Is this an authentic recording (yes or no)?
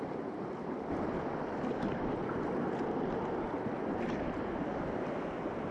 yes